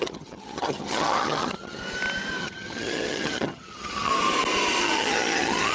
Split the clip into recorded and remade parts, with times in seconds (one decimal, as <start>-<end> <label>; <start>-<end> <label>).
0.0-1.8 remade; 1.8-2.4 recorded; 2.4-4.1 remade; 4.1-4.8 recorded; 4.8-5.7 remade